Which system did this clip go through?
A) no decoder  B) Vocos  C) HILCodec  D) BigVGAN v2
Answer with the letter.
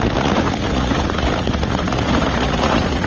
B